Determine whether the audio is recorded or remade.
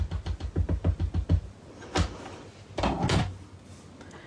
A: recorded